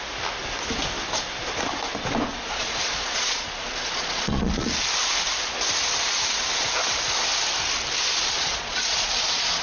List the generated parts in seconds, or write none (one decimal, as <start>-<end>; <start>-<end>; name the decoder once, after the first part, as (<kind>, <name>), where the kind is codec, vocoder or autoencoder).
2.3-4.7 (vocoder, Vocos); 8.2-9.6